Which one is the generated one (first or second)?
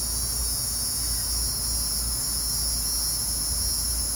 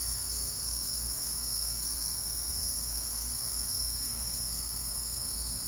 second